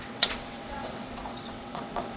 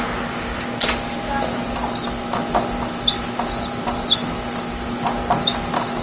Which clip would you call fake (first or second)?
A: first